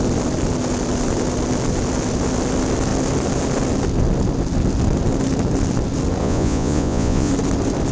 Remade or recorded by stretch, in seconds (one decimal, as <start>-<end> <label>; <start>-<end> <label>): 0.0-6.2 recorded; 6.2-7.3 remade; 7.3-7.9 recorded